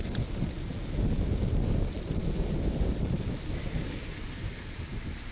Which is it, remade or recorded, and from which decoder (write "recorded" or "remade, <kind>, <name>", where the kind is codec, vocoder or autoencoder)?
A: recorded